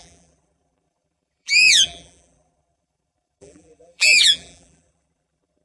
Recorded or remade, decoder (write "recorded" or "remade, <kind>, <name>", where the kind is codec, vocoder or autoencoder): remade, vocoder, BigVGAN v2